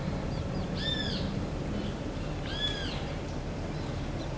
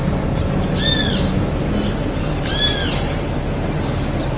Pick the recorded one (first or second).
second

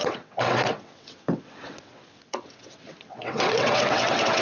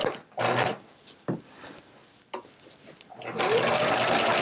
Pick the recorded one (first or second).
second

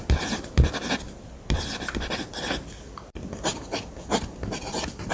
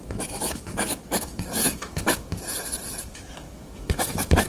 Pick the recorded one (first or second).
first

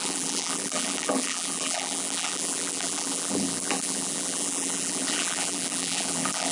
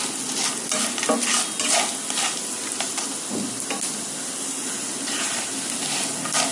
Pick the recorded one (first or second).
second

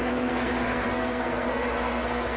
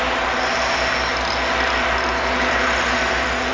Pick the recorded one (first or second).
second